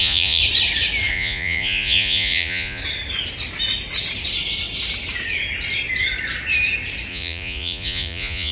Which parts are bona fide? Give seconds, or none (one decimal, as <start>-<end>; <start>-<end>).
0.4-1.1; 2.8-7.1